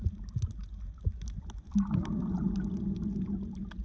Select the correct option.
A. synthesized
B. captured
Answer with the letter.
B